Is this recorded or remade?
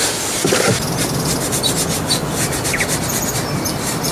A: recorded